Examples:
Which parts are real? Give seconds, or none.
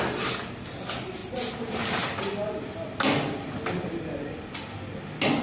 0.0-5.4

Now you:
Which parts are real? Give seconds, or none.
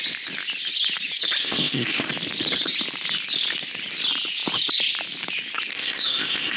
0.0-1.4; 2.1-5.7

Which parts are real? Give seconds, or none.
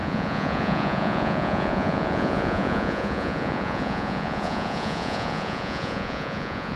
none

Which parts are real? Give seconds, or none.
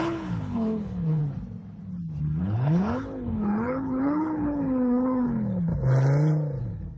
1.2-2.4; 5.7-6.6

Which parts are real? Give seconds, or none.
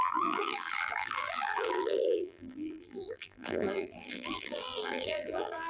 none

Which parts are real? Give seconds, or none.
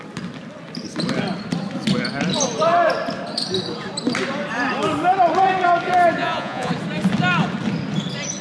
0.0-6.2; 6.7-8.4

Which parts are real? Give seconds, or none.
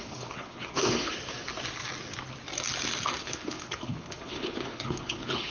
1.1-3.2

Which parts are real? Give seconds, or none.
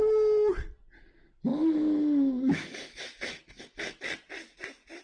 0.0-1.5; 4.0-5.0